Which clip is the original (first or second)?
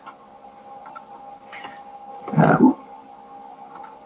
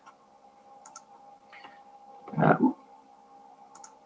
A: first